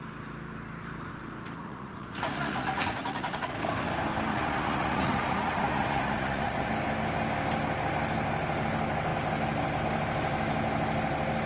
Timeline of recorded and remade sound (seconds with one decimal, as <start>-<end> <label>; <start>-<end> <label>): 0.0-1.6 recorded; 1.6-3.5 remade; 3.5-4.3 recorded; 4.3-6.7 remade; 6.7-11.5 recorded